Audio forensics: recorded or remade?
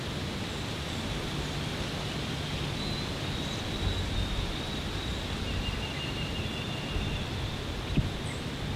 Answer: recorded